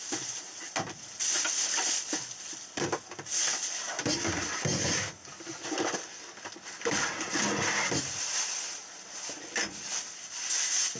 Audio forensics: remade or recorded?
recorded